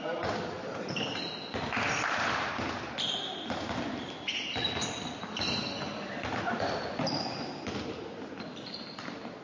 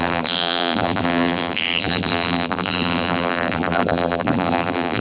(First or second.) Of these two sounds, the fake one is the second